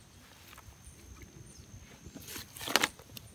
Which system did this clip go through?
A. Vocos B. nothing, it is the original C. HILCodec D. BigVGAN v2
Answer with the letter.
B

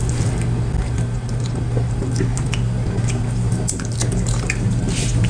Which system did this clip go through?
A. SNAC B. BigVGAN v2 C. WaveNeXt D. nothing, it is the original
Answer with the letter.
D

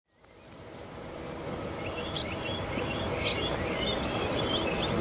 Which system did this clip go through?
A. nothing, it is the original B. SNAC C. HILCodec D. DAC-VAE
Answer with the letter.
A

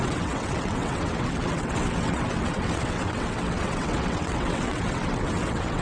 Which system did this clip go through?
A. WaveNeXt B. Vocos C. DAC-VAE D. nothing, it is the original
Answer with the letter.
A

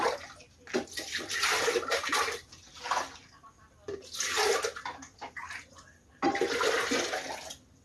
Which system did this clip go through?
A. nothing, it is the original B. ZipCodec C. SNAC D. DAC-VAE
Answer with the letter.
A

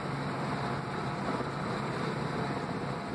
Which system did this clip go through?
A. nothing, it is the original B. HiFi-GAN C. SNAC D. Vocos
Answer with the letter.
A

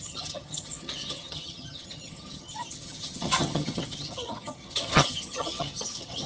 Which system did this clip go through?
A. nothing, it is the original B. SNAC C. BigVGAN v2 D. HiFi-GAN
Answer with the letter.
D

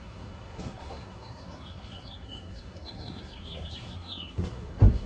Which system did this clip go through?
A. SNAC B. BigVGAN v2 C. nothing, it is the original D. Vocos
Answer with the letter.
A